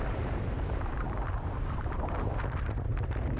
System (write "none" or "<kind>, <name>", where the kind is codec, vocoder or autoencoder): vocoder, BigVGAN v2